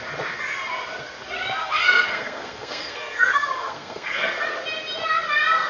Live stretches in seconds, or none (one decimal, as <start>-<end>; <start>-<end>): 0.0-1.6; 4.4-5.7

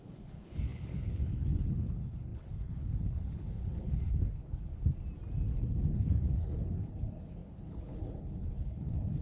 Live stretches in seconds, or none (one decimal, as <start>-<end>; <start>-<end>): 4.7-5.6